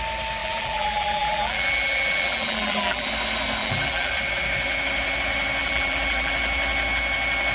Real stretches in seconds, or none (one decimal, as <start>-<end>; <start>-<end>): 0.0-0.4; 3.1-3.6; 4.1-5.6; 6.3-7.5